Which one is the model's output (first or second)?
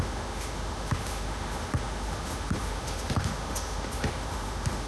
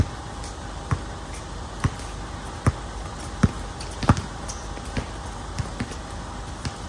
first